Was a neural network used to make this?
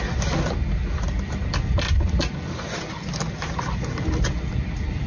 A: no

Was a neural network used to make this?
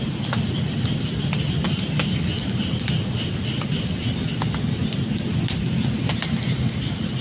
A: no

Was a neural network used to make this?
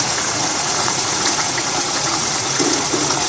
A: yes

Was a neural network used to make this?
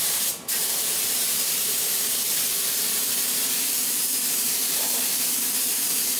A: yes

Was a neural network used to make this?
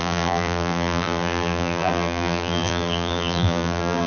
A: yes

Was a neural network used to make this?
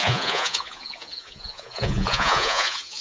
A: yes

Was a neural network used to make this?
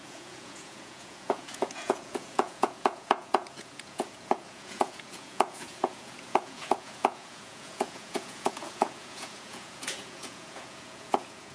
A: yes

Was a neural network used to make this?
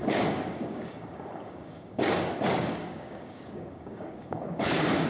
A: yes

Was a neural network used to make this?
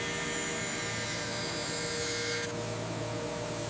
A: no